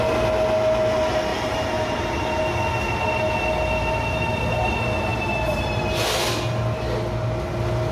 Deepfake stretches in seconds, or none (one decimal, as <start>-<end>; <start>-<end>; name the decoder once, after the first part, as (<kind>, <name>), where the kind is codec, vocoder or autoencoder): 1.3-2.4 (vocoder, BigVGAN v2); 5.1-5.8